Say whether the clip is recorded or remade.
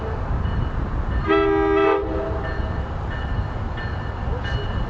recorded